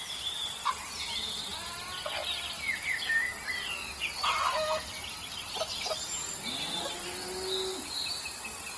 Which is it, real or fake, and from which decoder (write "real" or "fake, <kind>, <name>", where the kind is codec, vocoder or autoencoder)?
real